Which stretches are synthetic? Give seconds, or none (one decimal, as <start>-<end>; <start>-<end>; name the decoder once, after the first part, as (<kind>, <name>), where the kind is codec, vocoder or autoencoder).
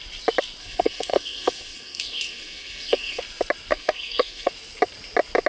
0.6-3.2 (codec, SNAC); 3.7-4.5